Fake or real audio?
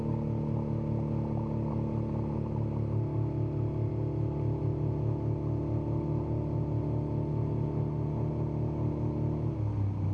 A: real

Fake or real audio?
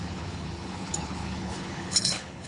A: fake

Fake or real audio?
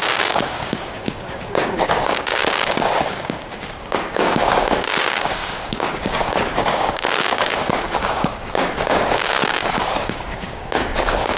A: fake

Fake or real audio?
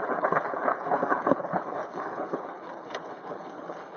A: fake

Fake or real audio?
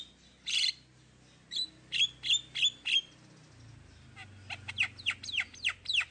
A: real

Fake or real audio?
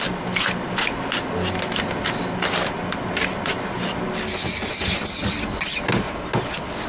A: real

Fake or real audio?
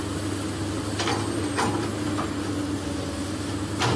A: real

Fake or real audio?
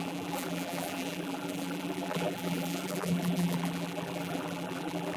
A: fake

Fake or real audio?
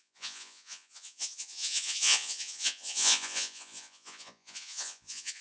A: fake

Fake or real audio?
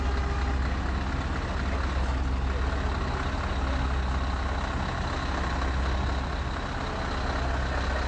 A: real